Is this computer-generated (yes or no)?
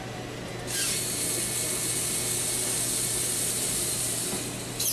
no